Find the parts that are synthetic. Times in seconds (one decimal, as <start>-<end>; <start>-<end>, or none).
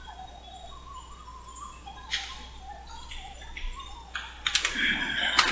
none